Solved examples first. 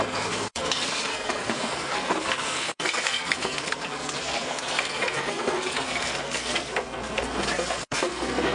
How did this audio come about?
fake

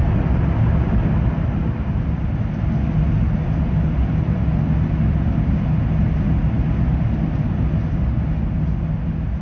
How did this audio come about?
real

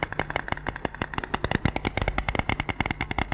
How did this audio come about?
real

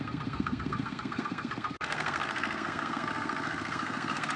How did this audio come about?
fake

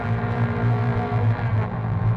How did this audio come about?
fake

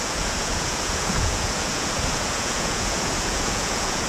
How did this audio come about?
fake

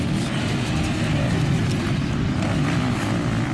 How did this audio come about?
real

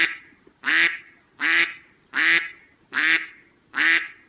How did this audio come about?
real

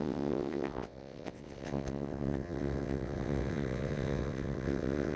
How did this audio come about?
fake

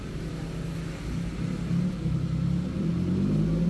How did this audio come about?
real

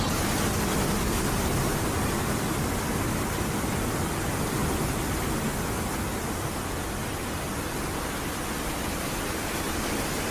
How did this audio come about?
real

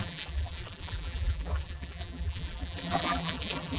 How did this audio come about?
fake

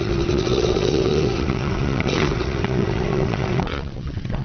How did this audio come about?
fake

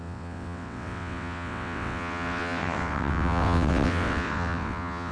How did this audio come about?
fake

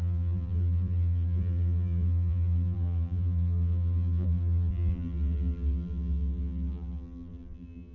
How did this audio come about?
fake